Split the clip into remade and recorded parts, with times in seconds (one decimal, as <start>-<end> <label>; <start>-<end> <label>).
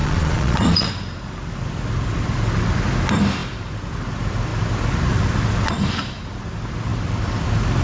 0.0-0.9 remade; 0.9-7.8 recorded